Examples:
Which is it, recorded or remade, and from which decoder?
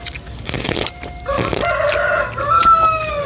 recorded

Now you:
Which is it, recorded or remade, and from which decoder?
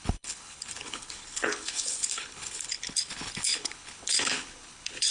remade, codec, HILCodec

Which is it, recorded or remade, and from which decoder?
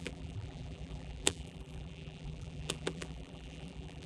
remade, vocoder, BigVGAN v2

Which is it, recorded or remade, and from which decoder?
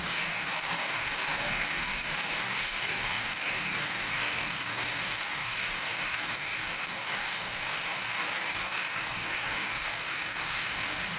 remade, codec, DAC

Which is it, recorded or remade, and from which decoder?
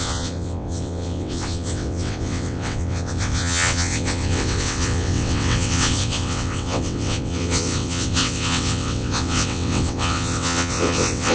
remade, vocoder, WaveNeXt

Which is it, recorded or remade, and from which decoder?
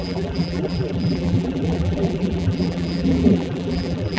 remade, vocoder, BigVGAN v2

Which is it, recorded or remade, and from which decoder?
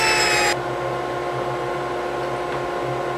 recorded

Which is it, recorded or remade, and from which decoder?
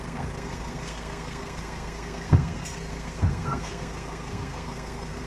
remade, codec, SNAC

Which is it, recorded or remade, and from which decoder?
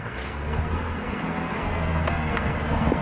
remade, codec, SNAC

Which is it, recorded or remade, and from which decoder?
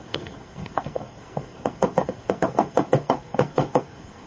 remade, codec, SNAC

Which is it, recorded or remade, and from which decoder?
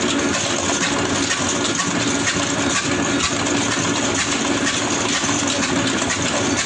recorded